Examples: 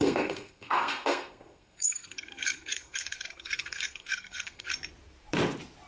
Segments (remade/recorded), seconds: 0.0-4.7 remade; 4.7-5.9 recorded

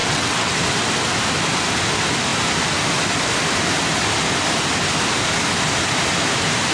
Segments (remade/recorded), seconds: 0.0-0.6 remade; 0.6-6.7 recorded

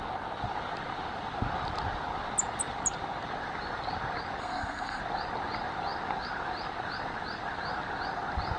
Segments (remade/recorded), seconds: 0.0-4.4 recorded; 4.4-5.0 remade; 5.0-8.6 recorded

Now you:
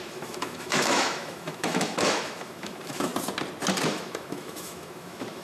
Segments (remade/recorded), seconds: 0.0-3.1 remade; 3.1-3.9 recorded; 3.9-5.4 remade